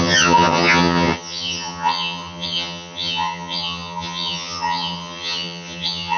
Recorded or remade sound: remade